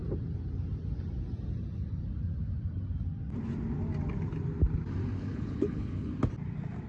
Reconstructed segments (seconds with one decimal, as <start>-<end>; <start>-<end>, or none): 5.1-6.1